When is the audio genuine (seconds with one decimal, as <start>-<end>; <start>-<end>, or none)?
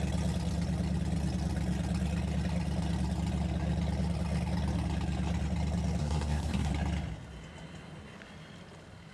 0.0-6.0; 6.7-9.1